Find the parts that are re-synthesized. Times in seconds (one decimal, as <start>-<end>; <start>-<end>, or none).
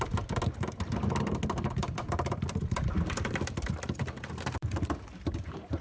1.8-5.3